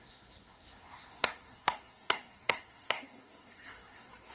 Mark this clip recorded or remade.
remade